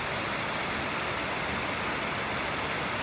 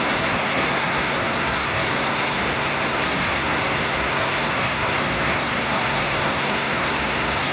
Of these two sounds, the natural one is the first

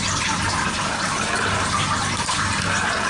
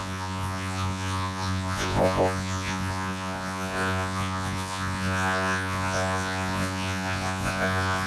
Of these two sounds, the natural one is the first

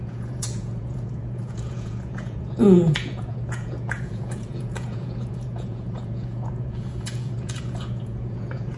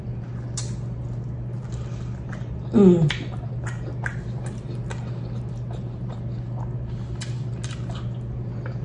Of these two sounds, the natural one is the second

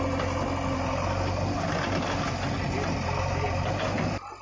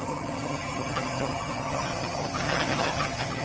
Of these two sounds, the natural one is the first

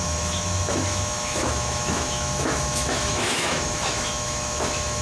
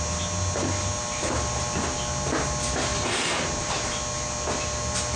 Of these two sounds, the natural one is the second